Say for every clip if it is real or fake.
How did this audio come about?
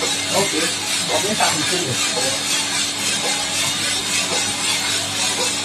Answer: real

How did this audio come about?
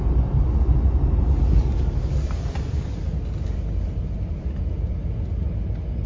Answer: real